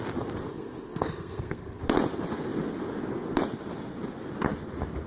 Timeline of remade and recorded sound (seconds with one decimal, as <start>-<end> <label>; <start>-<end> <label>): 0.0-0.5 recorded; 0.5-1.8 remade; 1.8-5.1 recorded